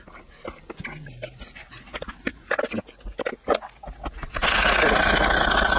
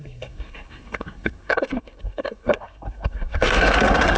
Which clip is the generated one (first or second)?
second